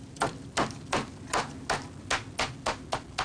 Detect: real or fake real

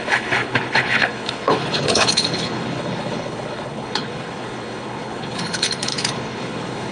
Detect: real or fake fake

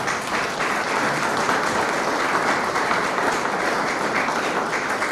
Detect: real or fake real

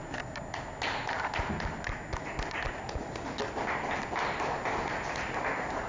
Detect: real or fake real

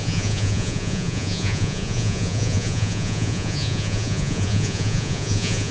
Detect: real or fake fake